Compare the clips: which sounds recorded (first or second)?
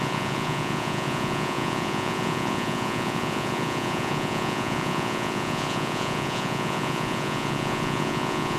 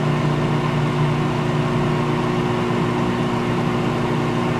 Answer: second